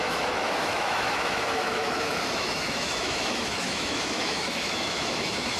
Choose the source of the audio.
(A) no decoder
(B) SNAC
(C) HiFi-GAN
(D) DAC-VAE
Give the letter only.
D